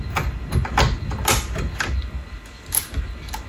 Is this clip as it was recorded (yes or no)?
yes